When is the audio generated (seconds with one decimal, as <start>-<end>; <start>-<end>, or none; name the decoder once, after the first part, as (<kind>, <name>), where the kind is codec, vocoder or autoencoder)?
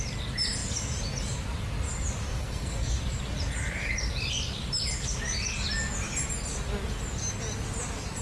2.3-3.0 (codec, SNAC)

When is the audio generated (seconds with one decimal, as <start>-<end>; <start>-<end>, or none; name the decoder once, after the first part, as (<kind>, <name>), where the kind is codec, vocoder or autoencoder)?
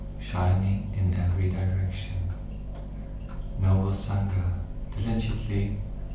none